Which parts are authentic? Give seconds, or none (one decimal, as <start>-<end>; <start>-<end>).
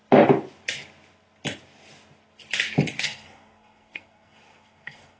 0.0-3.0